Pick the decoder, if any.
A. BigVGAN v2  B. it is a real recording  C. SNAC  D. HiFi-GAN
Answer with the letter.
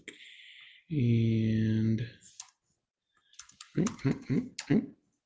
B